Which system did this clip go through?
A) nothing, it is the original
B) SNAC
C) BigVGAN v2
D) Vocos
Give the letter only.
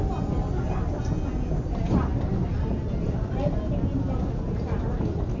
A